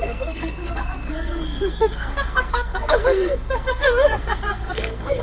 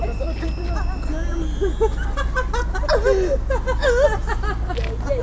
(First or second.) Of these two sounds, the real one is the second